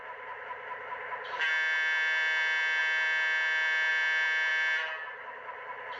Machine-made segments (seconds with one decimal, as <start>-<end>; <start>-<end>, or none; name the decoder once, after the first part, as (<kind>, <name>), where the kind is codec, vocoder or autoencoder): none